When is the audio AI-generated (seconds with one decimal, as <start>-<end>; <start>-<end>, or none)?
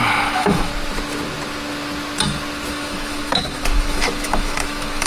0.0-0.7; 2.7-5.1